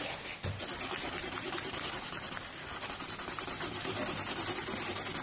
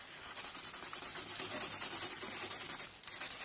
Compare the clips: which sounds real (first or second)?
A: second